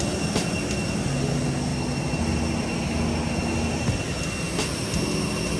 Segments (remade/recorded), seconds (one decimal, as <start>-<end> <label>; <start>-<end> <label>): 0.0-5.6 recorded